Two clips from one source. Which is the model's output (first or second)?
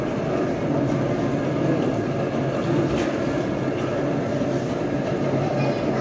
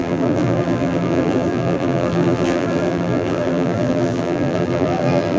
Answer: second